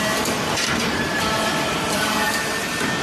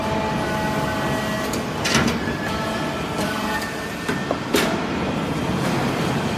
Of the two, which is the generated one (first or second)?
first